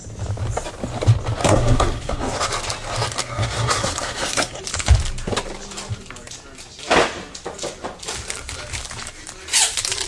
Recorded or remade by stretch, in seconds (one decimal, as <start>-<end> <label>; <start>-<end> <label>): 0.0-1.4 recorded; 1.4-2.4 remade; 2.4-3.2 recorded; 3.2-4.6 remade; 4.6-10.1 recorded